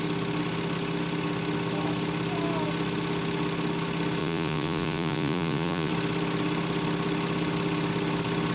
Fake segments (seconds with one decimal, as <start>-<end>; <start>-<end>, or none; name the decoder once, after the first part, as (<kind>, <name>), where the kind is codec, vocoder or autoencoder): 4.2-5.9 (vocoder, Vocos)